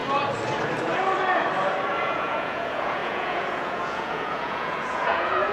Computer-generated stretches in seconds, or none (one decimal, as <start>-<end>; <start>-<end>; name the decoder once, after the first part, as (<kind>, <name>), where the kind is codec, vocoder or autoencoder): 2.0-5.5 (vocoder, Vocos)